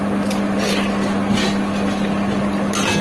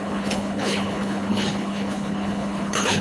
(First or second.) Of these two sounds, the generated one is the second